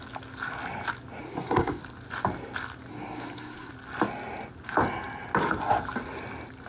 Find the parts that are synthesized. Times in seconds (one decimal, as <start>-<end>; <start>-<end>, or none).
1.2-1.8; 2.9-3.7